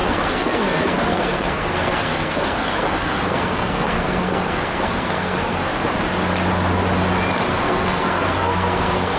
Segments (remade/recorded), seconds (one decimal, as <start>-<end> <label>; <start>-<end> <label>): 0.0-5.7 remade; 5.7-7.5 recorded; 7.5-9.2 remade